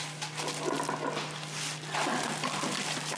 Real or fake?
real